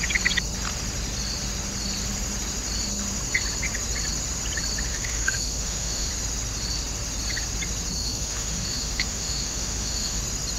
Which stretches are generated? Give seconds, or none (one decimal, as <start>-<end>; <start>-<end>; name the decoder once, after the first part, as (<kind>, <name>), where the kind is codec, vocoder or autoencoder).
4.9-6.1 (autoencoder, DAC-VAE); 8.0-10.2